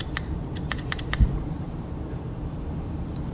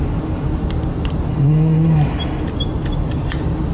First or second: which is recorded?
second